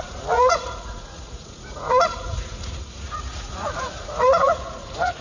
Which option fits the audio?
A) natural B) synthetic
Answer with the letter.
B